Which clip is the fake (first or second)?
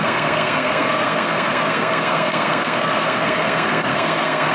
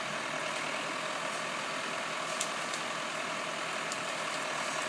first